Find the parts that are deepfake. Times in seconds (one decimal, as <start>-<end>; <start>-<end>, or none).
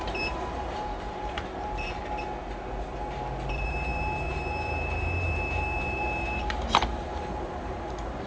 0.0-2.0; 3.5-8.3